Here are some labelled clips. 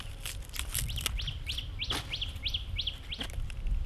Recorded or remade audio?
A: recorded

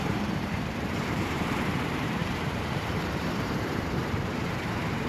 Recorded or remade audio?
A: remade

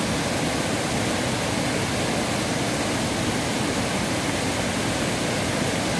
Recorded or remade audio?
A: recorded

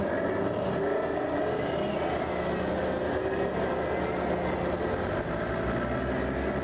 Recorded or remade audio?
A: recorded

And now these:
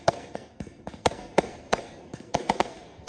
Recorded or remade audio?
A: remade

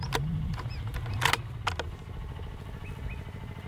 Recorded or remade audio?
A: recorded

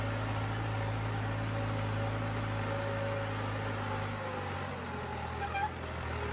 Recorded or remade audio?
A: recorded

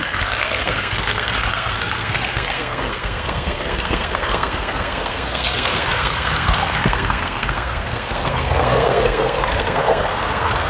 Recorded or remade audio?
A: remade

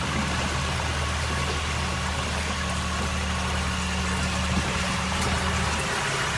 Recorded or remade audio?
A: recorded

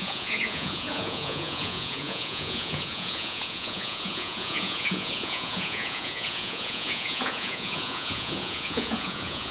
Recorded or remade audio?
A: remade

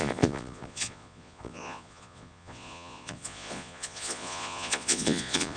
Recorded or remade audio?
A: remade